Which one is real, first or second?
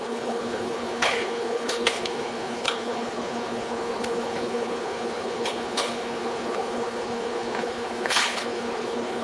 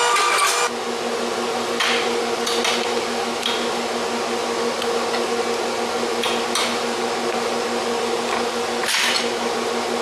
second